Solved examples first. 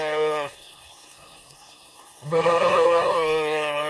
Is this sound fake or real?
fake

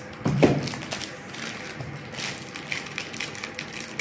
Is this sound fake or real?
real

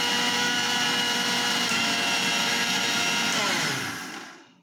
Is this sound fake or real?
real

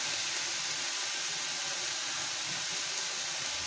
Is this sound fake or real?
real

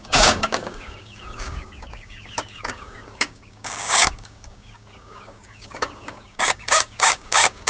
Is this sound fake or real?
fake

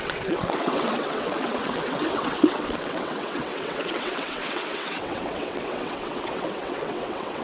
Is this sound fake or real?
fake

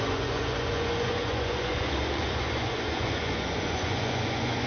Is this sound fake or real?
fake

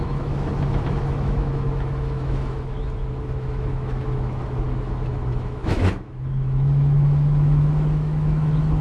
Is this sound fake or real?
fake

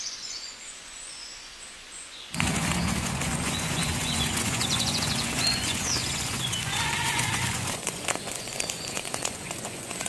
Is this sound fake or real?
fake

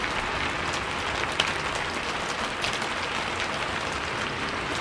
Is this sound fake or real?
real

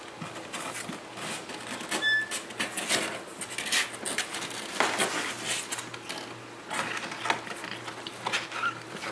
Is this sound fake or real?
real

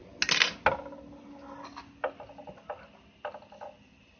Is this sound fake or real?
real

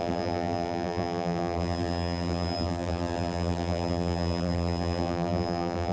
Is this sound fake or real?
fake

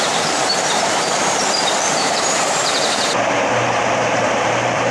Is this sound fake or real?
fake